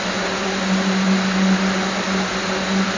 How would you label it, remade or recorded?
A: recorded